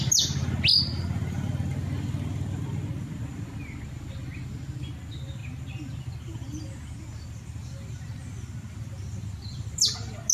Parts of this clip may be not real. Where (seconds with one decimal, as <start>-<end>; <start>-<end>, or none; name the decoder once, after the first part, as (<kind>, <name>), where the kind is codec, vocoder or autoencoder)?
none